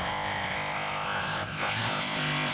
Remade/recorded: remade